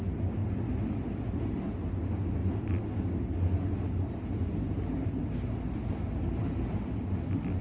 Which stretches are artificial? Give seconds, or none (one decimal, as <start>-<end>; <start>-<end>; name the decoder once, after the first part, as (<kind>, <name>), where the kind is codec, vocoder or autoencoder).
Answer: none